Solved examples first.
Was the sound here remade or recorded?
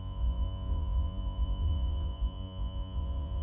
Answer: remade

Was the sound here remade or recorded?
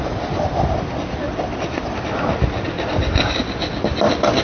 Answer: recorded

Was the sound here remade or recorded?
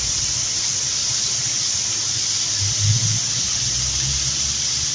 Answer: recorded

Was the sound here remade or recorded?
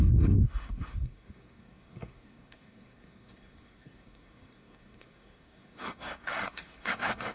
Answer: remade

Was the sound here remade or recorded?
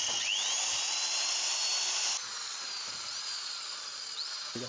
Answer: recorded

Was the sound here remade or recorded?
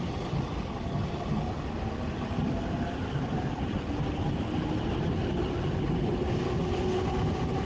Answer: recorded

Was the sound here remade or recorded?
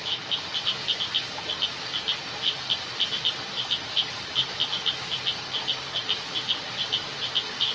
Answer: recorded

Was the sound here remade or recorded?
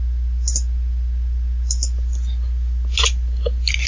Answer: recorded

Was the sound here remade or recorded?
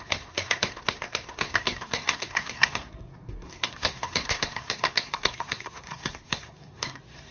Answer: remade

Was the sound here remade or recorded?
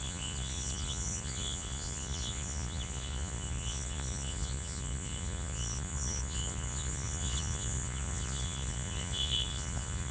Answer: remade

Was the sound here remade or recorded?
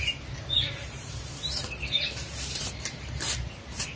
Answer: remade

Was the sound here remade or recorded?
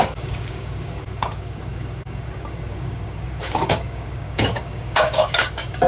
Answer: remade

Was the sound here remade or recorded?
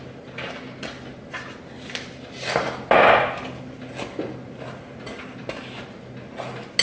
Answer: recorded